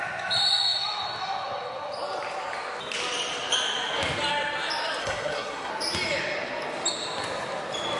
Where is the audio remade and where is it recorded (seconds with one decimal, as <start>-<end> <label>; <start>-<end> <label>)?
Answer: 0.0-5.0 recorded; 5.0-5.7 remade; 5.7-8.0 recorded